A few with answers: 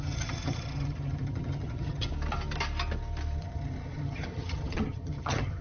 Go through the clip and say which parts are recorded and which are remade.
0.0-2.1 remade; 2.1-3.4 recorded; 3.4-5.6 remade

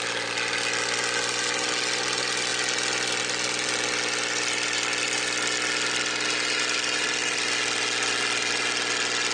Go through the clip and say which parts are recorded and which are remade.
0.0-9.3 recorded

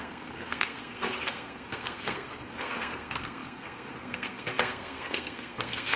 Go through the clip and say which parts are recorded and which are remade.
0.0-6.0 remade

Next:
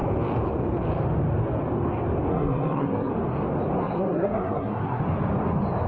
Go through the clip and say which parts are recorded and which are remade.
0.0-2.3 recorded; 2.3-3.1 remade; 3.1-3.8 recorded; 3.8-5.0 remade; 5.0-5.9 recorded

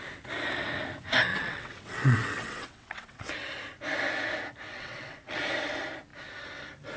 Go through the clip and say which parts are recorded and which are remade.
0.0-1.3 recorded; 1.3-3.3 remade; 3.3-4.7 recorded; 4.7-5.4 remade; 5.4-7.0 recorded

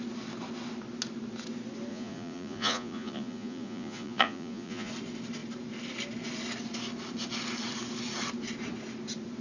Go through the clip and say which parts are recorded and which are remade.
0.0-1.9 recorded; 1.9-4.9 remade; 4.9-9.4 recorded